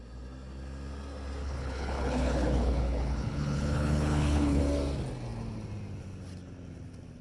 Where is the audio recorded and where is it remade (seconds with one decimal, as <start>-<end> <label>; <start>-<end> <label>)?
0.0-1.4 recorded; 1.4-4.6 remade; 4.6-7.2 recorded